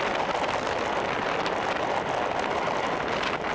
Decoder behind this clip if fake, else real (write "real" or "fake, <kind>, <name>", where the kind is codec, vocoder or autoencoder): real